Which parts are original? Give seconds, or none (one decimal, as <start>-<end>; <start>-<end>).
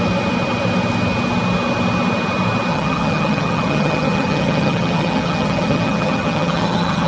0.0-2.7